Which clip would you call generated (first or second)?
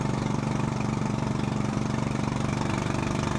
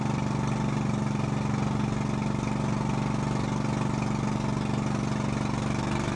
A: first